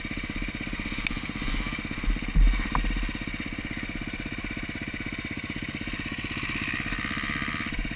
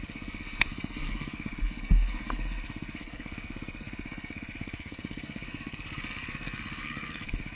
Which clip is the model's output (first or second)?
second